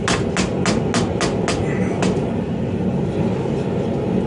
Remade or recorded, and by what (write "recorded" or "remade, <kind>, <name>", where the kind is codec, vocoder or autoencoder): recorded